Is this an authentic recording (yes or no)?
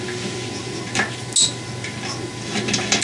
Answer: yes